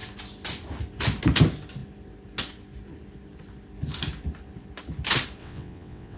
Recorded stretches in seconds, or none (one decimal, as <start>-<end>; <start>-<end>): 0.0-5.4